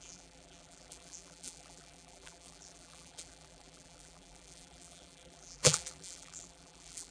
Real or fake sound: fake